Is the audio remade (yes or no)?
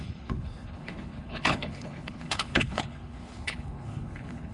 yes